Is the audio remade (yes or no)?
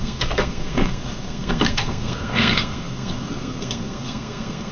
yes